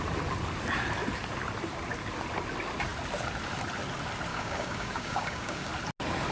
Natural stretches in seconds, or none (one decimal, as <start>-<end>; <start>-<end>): 0.0-4.3; 5.7-6.3